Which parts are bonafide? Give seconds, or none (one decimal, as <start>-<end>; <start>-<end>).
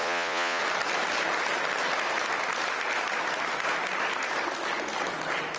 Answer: 0.6-5.6